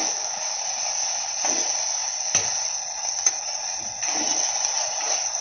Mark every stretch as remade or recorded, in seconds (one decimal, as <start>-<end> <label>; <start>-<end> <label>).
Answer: 0.0-0.6 remade; 0.6-5.4 recorded